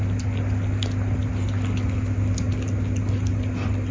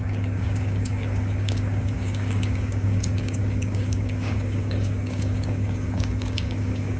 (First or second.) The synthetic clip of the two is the second